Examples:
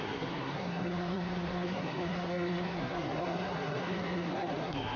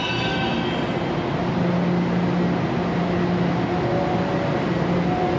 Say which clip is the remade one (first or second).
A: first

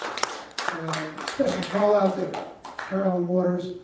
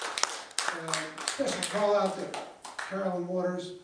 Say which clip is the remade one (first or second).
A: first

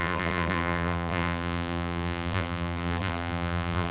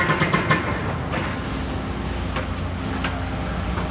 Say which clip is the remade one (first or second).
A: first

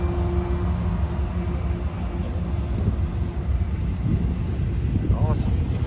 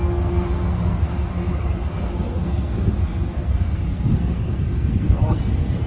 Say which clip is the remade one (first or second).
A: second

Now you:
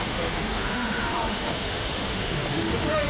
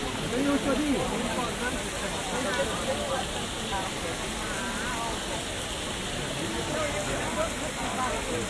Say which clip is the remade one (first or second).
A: first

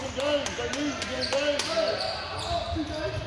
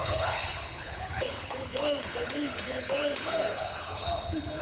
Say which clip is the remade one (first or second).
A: second